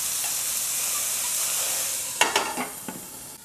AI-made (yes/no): no